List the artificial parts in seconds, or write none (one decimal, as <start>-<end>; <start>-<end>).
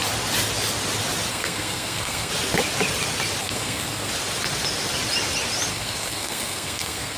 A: 1.3-2.3; 3.4-4.1; 5.7-7.2